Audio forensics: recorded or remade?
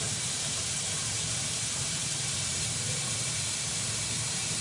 remade